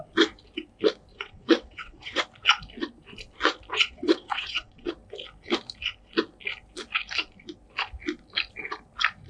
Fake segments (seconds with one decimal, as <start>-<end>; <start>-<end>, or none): 1.1-2.2; 3.7-4.9

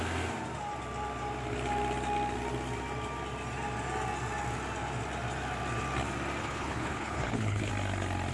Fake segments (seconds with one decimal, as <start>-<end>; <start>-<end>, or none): 6.4-7.7

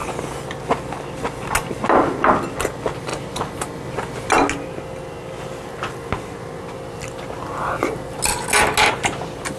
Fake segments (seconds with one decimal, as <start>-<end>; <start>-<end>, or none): none